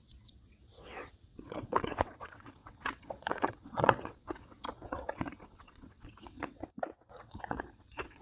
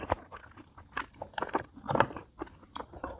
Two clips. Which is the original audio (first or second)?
second